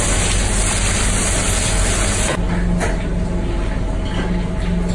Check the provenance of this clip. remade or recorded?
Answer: recorded